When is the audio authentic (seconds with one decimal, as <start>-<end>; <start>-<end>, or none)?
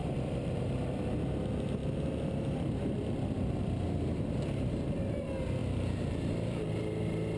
1.0-5.6; 6.3-7.4